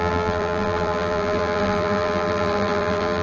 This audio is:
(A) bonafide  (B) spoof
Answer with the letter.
B